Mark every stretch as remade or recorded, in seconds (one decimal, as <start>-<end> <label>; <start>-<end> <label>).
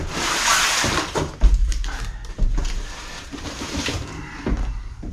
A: 0.0-1.6 recorded; 1.6-5.1 remade